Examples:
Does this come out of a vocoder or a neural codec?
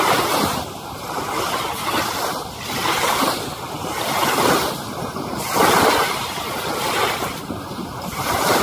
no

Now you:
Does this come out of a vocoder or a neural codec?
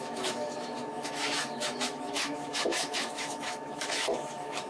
yes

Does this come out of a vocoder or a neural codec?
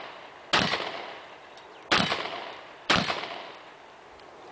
no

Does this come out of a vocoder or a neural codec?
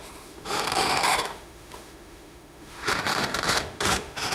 yes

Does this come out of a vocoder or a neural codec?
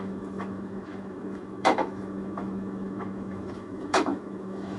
yes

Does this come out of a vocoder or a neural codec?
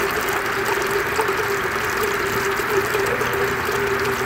no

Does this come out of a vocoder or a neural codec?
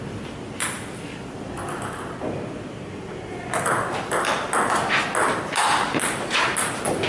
no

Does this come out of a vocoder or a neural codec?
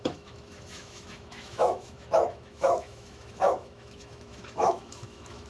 yes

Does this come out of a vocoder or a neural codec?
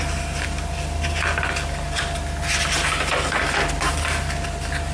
no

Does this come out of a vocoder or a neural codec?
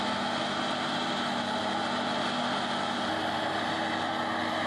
no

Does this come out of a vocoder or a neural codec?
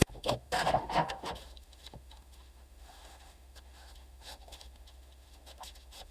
yes